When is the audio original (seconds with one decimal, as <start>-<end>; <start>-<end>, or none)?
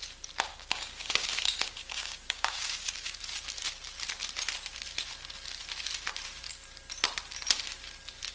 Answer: 0.0-0.5; 3.2-8.3